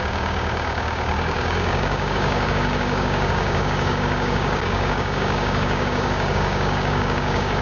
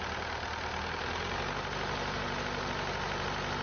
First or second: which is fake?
first